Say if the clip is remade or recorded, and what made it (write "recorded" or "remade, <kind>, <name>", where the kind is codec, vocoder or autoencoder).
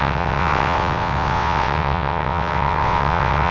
remade, vocoder, WaveNeXt